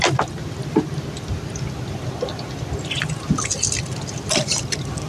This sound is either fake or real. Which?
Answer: real